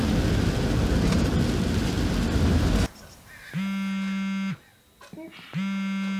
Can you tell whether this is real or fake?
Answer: real